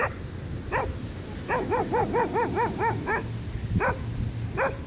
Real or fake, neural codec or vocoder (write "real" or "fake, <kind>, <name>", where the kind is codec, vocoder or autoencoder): real